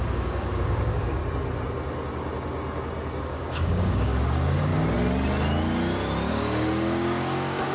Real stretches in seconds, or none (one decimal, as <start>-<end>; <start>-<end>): 1.2-3.2; 4.7-6.3

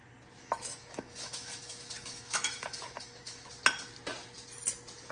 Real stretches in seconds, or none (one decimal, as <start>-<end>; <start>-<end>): 0.0-0.4; 3.5-5.1

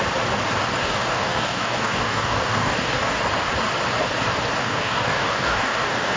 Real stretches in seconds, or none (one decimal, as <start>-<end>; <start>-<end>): 0.0-0.8; 3.2-4.6